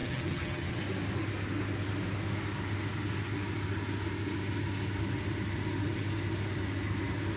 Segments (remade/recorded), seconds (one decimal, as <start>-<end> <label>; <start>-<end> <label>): 0.0-0.8 remade; 0.8-7.4 recorded